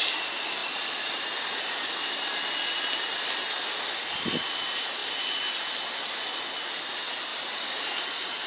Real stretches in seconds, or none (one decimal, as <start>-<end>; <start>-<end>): 0.0-0.6; 1.5-3.1; 3.6-8.5